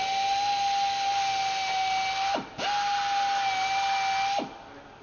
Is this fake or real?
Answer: real